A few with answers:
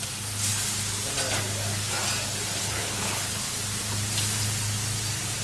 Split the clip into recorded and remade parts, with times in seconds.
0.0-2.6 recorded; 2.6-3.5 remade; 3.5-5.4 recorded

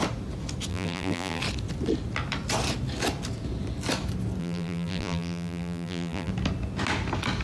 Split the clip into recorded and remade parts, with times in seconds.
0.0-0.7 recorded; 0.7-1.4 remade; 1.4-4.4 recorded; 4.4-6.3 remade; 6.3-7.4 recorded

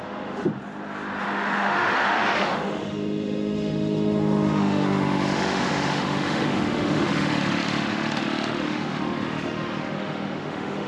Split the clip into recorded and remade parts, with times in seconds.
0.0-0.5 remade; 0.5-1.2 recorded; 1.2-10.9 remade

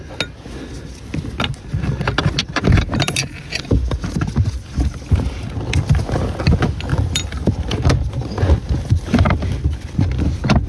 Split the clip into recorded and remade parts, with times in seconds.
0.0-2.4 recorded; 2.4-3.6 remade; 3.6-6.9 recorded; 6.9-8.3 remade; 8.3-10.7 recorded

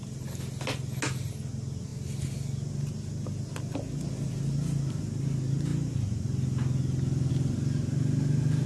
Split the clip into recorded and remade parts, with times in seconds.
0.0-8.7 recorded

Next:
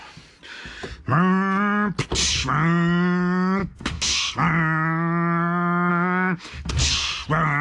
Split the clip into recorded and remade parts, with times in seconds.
0.0-3.6 recorded; 3.6-4.3 remade; 4.3-5.9 recorded; 5.9-6.7 remade; 6.7-7.6 recorded

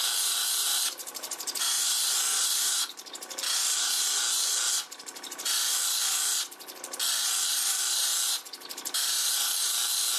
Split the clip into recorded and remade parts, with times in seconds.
0.0-0.6 recorded; 0.6-2.8 remade; 2.8-7.5 recorded; 7.5-8.1 remade; 8.1-10.2 recorded